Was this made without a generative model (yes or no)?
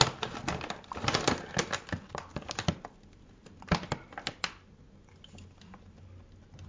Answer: yes